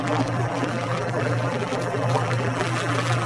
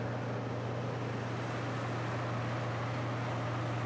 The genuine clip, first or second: second